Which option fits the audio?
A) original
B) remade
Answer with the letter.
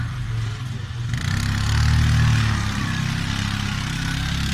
A